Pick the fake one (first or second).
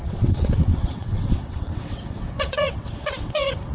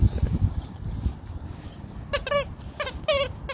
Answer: first